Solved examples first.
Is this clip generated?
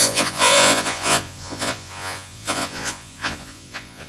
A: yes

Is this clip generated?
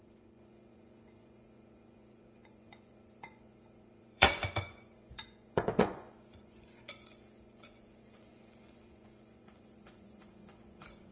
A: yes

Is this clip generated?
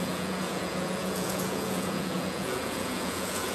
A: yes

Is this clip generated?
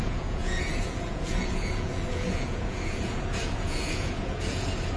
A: yes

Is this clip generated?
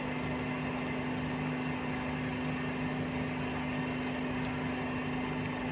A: no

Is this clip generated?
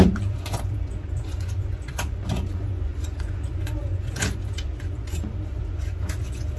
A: yes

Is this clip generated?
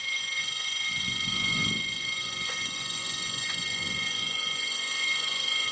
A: yes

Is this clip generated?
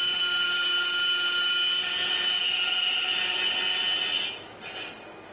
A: no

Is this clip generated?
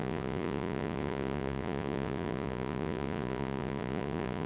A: yes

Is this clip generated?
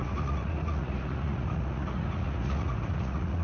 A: yes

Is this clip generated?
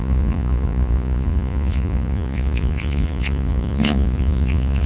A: yes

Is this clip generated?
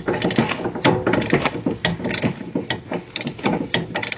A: no